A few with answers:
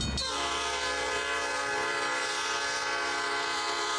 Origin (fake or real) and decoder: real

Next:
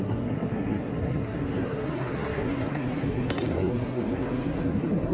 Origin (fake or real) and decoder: fake, codec, SNAC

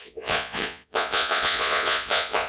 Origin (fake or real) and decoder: fake, vocoder, Vocos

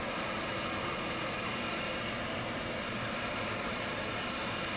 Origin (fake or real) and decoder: real